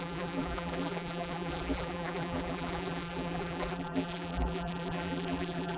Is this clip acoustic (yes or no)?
no